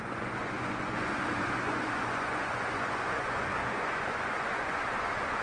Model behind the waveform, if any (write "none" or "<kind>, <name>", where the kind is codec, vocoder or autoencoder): vocoder, Vocos